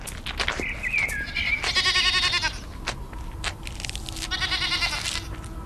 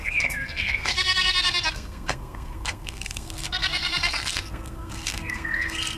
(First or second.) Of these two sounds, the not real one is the second